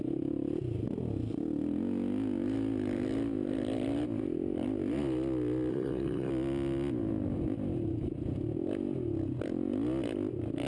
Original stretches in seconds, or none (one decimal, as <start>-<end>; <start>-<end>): 0.0-5.7; 6.3-10.7